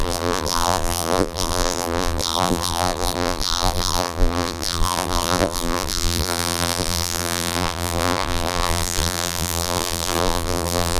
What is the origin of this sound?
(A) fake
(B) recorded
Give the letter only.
A